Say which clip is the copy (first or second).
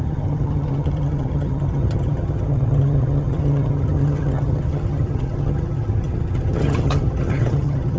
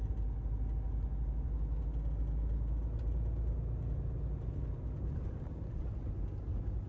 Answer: first